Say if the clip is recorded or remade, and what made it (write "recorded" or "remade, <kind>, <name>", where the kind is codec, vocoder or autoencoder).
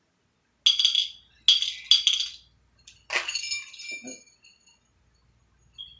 recorded